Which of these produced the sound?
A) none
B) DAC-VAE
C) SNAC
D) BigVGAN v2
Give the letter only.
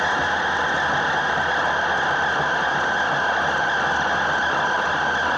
A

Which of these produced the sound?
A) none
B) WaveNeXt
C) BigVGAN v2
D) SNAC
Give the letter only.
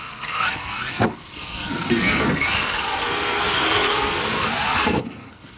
D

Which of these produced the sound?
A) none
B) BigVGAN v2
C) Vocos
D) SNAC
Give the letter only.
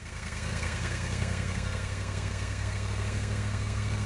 D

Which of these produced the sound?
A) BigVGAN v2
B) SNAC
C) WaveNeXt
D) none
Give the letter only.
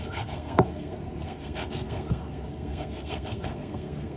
B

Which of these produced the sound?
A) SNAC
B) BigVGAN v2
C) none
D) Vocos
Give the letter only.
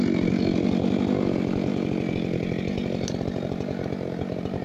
C